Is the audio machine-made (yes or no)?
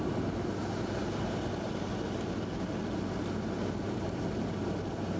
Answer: no